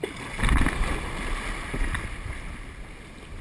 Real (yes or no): yes